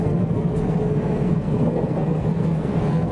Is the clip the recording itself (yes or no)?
no